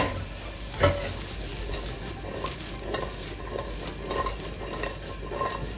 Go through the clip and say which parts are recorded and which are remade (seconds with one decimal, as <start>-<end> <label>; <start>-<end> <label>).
0.0-5.8 recorded